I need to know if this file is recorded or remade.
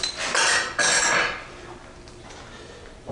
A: recorded